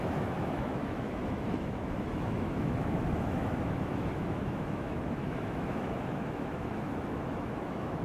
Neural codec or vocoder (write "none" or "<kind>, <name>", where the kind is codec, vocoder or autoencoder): autoencoder, DAC-VAE